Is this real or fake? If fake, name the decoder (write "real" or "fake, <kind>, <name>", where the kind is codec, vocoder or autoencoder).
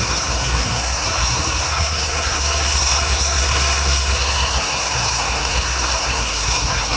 fake, codec, SNAC